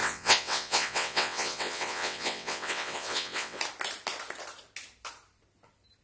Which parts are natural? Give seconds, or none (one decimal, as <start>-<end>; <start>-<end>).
3.6-6.0